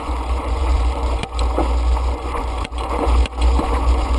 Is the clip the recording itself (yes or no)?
no